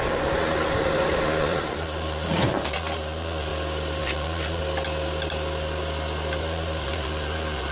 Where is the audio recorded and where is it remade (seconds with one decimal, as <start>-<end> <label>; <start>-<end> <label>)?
0.0-3.5 remade; 3.5-4.0 recorded; 4.0-4.6 remade; 4.6-6.4 recorded; 6.4-7.7 remade

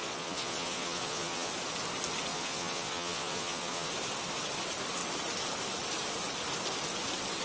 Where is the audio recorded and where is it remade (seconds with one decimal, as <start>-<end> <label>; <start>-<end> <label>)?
0.0-1.5 remade; 1.5-2.3 recorded; 2.3-3.9 remade; 3.9-7.4 recorded

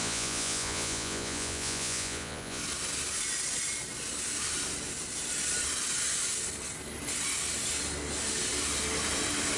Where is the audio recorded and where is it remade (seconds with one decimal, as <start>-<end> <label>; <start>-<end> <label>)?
0.0-2.6 remade; 2.6-9.6 recorded

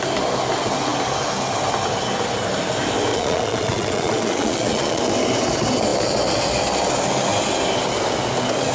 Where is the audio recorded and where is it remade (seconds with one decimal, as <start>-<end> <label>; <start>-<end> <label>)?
0.0-3.1 recorded; 3.1-5.0 remade; 5.0-8.7 recorded

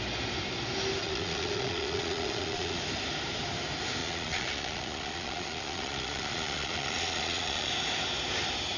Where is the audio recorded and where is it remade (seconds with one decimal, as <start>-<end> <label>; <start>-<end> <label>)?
0.0-1.0 recorded; 1.0-2.8 remade; 2.8-4.0 recorded; 4.0-7.7 remade; 7.7-8.8 recorded

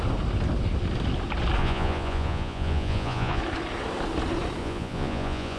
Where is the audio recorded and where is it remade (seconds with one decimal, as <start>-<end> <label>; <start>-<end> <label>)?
0.0-1.6 recorded; 1.6-3.4 remade; 3.4-4.6 recorded; 4.6-5.6 remade